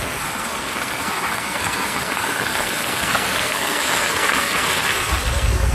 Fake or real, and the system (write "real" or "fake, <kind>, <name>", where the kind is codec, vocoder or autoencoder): fake, codec, SNAC